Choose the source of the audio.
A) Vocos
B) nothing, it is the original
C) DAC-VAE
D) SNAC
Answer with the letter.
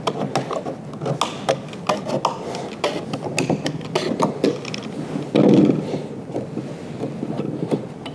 B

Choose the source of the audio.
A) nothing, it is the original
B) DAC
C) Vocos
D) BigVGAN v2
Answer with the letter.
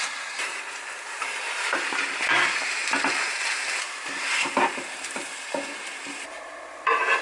D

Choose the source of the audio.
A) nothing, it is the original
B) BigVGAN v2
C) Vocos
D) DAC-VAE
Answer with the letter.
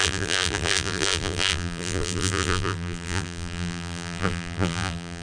B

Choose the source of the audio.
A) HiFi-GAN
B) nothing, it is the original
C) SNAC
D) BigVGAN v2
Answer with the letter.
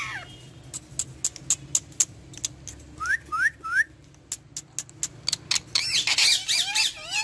B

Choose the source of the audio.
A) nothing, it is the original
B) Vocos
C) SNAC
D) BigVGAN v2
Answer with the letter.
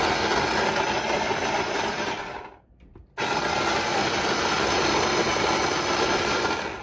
A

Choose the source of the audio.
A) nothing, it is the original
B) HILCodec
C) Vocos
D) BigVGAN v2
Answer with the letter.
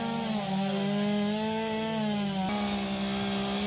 A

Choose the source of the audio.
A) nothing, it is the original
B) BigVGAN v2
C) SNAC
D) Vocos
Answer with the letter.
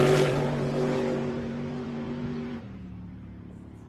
B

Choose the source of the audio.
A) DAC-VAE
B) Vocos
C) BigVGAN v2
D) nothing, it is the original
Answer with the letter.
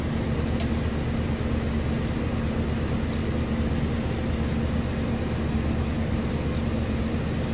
D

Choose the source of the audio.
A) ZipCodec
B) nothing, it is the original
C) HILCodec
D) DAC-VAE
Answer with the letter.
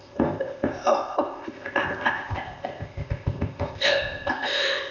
A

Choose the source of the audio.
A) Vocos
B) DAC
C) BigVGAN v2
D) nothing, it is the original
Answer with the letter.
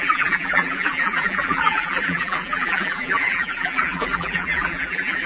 C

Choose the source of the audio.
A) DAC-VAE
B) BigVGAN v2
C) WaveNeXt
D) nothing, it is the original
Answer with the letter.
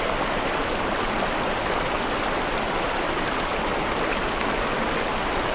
B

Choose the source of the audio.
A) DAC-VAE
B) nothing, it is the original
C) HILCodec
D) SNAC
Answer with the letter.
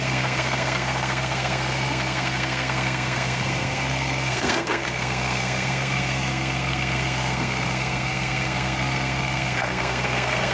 D